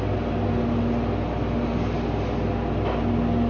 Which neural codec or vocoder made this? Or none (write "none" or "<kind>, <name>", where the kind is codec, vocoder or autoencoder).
none